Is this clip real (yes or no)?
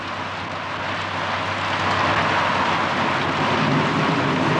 yes